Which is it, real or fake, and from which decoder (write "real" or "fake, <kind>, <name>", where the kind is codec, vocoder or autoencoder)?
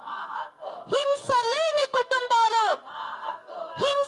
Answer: fake, codec, SNAC